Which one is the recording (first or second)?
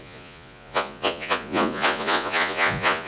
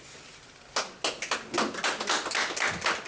second